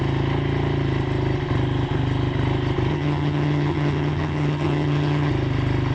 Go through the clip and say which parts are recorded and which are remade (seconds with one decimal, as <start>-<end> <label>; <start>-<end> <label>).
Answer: 0.0-2.9 recorded; 2.9-5.3 remade; 5.3-5.9 recorded